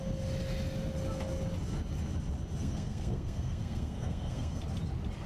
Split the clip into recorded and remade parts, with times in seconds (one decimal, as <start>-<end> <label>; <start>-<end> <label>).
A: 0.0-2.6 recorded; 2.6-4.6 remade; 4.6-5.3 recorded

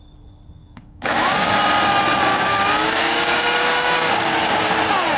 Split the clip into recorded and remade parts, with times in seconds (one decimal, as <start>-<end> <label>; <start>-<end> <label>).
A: 0.0-0.6 recorded; 0.6-1.5 remade; 1.5-2.3 recorded; 2.3-4.7 remade; 4.7-5.2 recorded

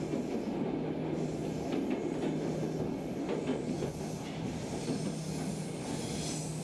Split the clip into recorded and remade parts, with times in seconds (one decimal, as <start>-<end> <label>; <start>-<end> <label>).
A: 0.0-3.5 recorded; 3.5-4.0 remade; 4.0-6.6 recorded

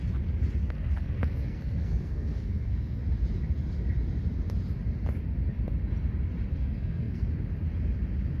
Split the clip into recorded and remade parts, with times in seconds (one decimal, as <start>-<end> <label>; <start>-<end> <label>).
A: 0.0-0.6 recorded; 0.6-3.0 remade; 3.0-6.5 recorded; 6.5-7.3 remade; 7.3-8.4 recorded

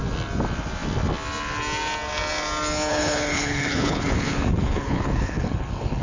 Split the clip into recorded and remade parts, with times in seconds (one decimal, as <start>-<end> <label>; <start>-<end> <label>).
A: 0.0-2.9 recorded; 2.9-6.0 remade

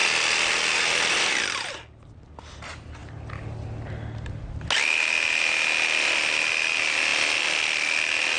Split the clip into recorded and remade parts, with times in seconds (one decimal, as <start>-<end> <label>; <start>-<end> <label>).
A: 0.0-8.4 recorded

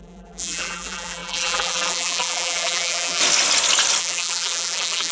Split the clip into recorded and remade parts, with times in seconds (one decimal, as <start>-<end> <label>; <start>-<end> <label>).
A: 0.0-3.2 remade; 3.2-4.0 recorded; 4.0-5.1 remade